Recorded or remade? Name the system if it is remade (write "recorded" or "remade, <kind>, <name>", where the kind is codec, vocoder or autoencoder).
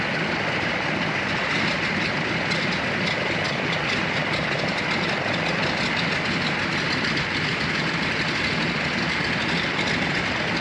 recorded